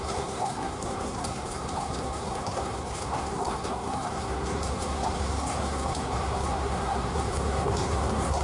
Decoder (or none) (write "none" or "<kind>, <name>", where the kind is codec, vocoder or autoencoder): codec, SNAC